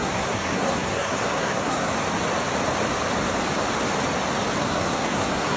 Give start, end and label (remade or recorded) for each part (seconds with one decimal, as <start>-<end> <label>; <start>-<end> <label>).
0.0-1.9 remade; 1.9-4.6 recorded; 4.6-5.6 remade